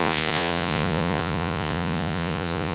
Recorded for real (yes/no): no